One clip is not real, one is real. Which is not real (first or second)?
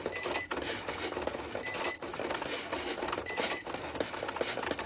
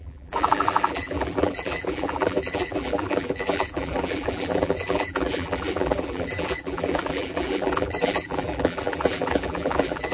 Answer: second